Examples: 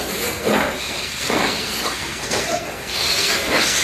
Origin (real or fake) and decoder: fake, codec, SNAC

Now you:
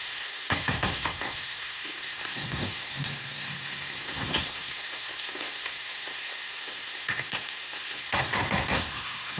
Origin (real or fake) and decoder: fake, codec, SNAC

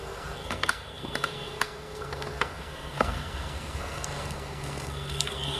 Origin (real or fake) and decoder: fake, codec, SNAC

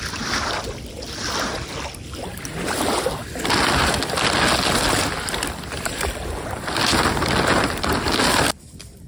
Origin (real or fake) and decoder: real